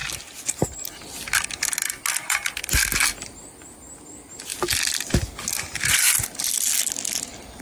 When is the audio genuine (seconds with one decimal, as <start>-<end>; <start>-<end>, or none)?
0.0-7.6